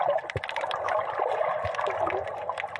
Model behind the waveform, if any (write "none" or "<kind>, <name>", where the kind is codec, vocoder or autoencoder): none